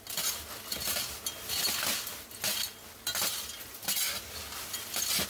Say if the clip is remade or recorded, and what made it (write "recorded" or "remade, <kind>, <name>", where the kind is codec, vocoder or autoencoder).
recorded